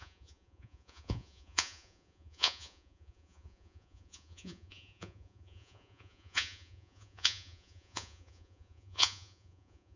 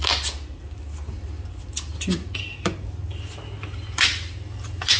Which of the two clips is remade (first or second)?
first